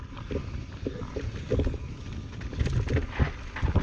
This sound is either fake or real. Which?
real